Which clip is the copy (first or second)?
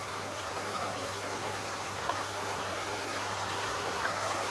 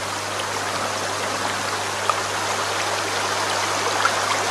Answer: first